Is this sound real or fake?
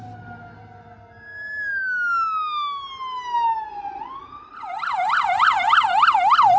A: real